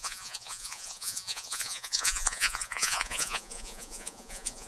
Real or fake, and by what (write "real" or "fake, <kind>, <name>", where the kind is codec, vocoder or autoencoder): fake, vocoder, Vocos